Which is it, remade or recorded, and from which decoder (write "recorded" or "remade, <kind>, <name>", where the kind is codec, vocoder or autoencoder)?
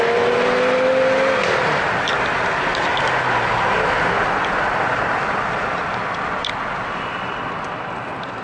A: recorded